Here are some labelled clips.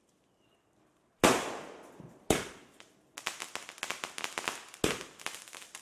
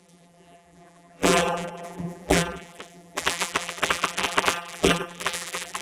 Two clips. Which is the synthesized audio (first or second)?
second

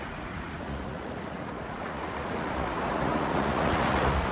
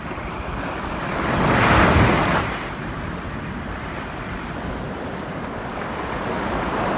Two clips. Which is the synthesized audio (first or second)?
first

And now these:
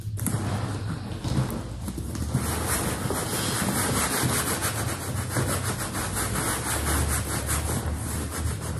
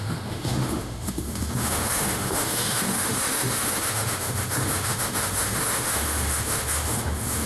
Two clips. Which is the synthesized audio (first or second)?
second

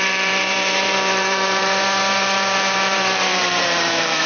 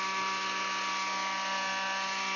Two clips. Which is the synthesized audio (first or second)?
first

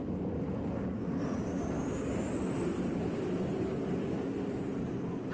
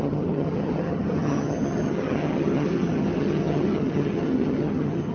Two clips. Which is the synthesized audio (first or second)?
second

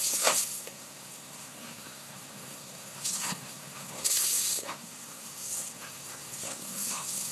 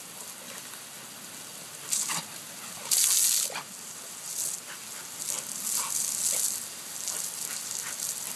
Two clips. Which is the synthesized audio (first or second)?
first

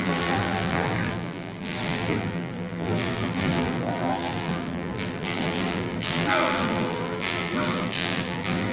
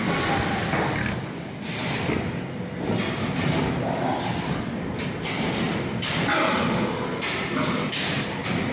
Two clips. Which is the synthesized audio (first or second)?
first